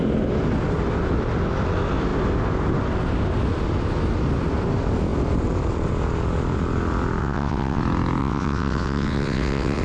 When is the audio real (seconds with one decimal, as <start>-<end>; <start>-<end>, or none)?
0.0-7.2; 7.8-8.2